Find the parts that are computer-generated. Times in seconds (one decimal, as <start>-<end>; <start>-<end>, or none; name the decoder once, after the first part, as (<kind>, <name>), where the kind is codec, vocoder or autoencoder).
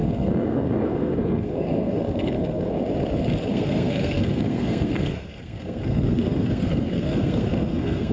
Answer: 0.0-2.7 (codec, SNAC); 3.5-8.1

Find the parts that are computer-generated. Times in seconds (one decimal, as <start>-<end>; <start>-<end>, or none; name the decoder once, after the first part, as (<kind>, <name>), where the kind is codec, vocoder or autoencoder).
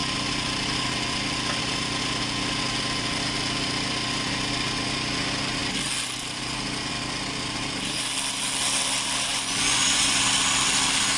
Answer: 9.3-10.2 (vocoder, Vocos)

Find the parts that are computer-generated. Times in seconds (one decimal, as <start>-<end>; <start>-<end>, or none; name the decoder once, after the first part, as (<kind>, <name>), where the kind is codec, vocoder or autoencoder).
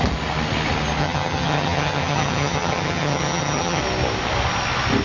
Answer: 1.0-3.8 (vocoder, HiFi-GAN)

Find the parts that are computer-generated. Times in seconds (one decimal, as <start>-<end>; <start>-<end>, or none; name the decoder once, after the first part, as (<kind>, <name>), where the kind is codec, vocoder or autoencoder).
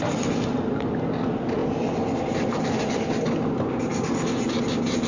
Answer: none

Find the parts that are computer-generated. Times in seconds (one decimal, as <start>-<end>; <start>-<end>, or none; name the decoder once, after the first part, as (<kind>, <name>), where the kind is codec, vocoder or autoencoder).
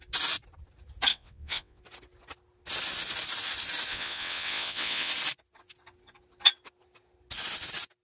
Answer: 1.1-1.8 (vocoder, WaveNeXt); 3.9-5.1